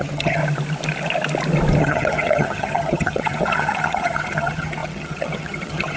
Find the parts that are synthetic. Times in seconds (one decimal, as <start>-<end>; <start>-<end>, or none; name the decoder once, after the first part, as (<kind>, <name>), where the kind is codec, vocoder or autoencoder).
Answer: 0.0-0.4 (vocoder, HiFi-GAN); 1.8-6.0